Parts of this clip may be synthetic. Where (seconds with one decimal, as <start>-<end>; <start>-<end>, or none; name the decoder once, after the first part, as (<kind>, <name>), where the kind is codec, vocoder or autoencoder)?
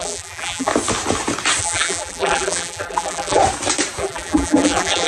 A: 0.0-0.7 (vocoder, BigVGAN v2); 1.6-3.4; 4.0-5.1